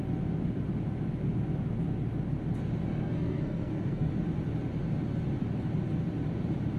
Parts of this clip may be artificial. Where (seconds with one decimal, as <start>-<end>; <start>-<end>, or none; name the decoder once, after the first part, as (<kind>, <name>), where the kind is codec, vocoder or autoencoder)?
2.9-4.1 (codec, SNAC)